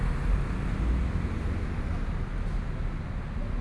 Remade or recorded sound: recorded